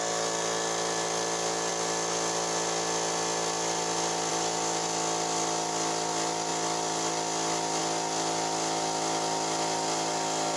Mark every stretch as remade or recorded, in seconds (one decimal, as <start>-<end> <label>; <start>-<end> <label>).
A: 0.0-10.6 recorded